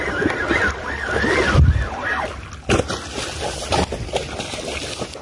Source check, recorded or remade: recorded